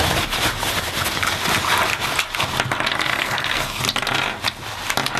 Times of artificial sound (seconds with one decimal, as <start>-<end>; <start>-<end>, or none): 3.1-3.8